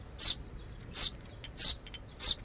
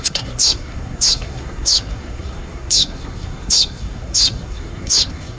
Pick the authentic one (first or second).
first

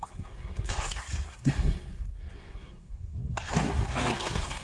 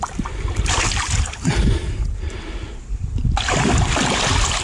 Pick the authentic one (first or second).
second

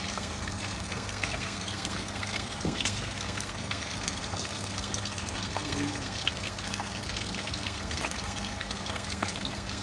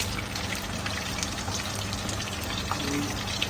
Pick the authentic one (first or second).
second